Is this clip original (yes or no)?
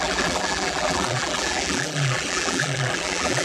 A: no